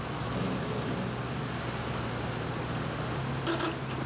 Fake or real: real